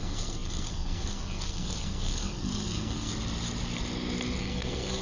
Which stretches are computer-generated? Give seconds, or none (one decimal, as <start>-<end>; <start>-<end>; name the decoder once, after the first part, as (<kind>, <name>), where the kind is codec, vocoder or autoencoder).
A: 0.0-3.1 (codec, SNAC); 4.4-5.0